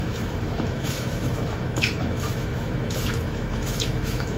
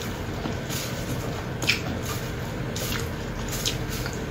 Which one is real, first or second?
second